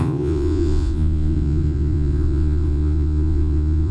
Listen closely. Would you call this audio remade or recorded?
remade